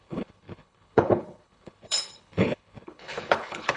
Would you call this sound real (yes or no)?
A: no